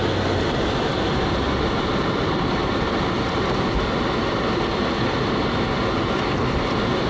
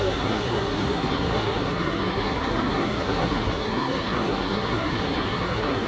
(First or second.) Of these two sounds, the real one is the first